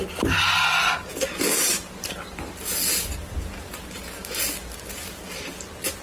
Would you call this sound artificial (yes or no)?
no